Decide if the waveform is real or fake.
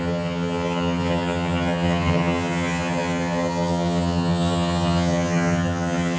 fake